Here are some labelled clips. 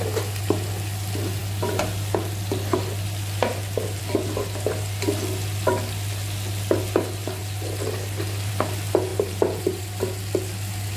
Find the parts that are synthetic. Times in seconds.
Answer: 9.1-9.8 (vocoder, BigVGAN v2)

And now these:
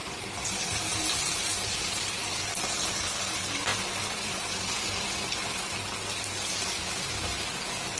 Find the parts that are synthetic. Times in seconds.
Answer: 0.0-2.3 (vocoder, BigVGAN v2)

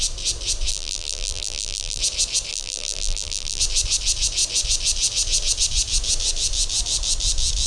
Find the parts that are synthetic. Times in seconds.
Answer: 0.7-2.0 (vocoder, BigVGAN v2); 2.5-3.6

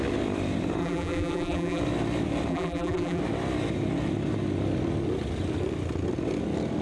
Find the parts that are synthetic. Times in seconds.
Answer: 0.8-1.8 (vocoder, BigVGAN v2); 2.5-3.2

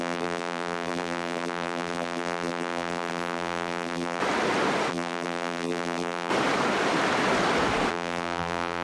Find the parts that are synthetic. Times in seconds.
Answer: 0.0-4.2 (vocoder, BigVGAN v2); 4.9-6.3; 7.9-8.8